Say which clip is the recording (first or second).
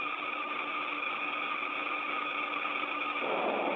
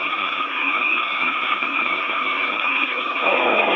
first